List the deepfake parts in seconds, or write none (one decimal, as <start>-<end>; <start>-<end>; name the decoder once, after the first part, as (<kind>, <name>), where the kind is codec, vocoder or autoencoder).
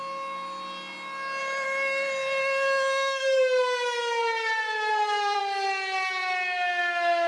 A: 1.4-5.4 (vocoder, BigVGAN v2)